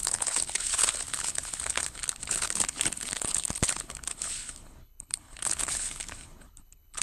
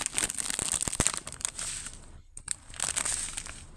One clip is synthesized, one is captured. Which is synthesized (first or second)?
first